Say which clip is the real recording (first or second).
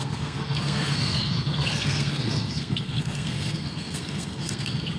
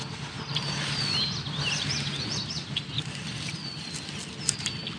second